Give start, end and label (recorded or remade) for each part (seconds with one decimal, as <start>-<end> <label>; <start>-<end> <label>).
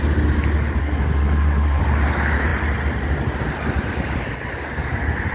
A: 0.0-0.8 recorded; 0.8-1.8 remade; 1.8-5.3 recorded